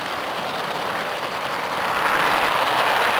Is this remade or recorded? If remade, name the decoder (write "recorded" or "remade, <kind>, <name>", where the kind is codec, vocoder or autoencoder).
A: remade, vocoder, BigVGAN v2